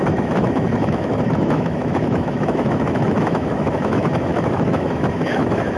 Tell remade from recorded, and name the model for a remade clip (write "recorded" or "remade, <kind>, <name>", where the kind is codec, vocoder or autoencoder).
remade, autoencoder, DAC-VAE